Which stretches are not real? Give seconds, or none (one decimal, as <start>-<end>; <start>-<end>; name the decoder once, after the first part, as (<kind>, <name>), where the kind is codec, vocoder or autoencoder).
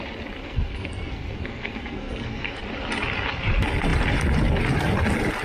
0.4-2.6 (codec, SNAC)